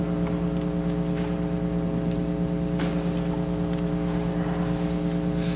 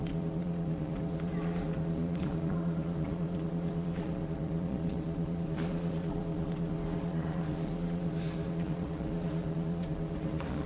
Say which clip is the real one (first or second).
first